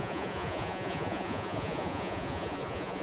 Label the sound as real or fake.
fake